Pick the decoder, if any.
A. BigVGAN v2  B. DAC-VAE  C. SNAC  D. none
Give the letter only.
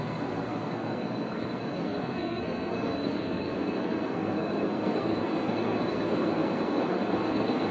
C